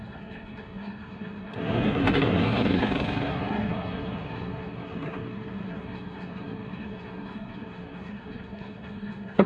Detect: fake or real fake